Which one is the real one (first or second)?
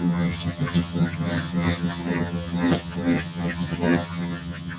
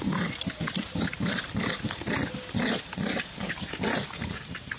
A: second